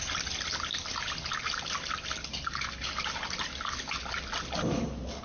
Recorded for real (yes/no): yes